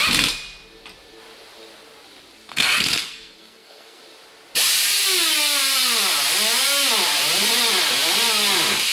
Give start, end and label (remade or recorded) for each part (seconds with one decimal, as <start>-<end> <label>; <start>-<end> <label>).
0.0-2.5 recorded; 2.5-4.0 remade; 4.0-8.9 recorded